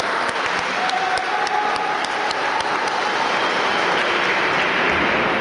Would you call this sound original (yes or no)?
yes